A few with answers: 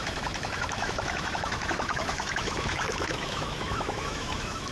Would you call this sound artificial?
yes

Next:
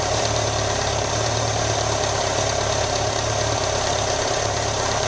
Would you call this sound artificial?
yes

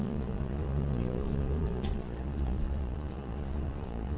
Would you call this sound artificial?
yes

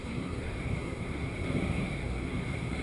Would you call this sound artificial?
yes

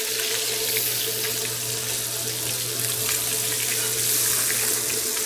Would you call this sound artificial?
no